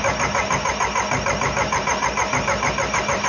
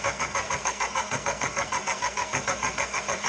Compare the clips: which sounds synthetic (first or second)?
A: second